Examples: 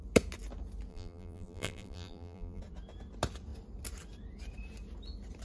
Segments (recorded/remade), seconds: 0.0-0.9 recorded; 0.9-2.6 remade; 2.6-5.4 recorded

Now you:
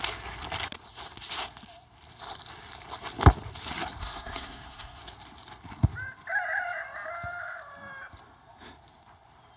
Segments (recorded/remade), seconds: 0.0-4.0 recorded; 4.0-5.0 remade; 5.0-9.6 recorded

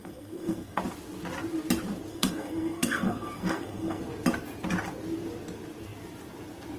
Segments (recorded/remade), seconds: 0.0-0.8 remade; 0.8-2.1 recorded; 2.1-4.0 remade; 4.0-6.8 recorded

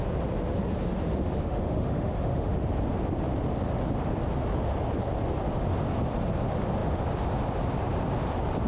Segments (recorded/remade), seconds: 0.0-1.2 recorded; 1.2-2.6 remade; 2.6-8.7 recorded